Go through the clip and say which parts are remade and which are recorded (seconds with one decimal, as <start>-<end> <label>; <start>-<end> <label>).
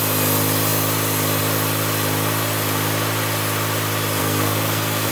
0.0-4.2 recorded; 4.2-5.1 remade